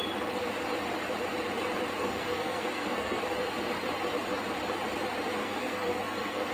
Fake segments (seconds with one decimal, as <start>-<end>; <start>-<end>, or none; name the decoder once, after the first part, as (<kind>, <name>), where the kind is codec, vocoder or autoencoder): 2.0-3.2 (codec, SNAC); 5.4-6.5